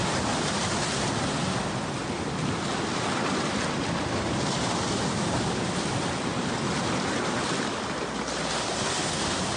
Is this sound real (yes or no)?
yes